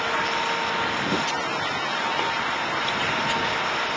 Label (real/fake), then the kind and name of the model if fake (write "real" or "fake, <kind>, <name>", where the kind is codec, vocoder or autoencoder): real